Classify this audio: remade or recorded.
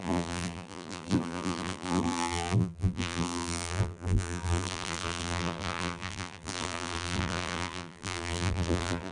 remade